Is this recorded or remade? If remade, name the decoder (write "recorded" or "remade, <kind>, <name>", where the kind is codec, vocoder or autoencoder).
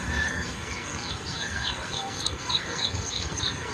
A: remade, codec, SNAC